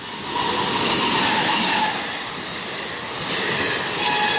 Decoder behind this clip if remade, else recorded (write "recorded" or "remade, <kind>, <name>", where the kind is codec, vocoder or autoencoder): recorded